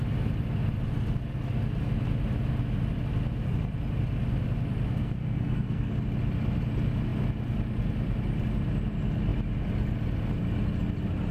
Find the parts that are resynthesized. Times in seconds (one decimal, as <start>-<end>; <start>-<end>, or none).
5.0-5.9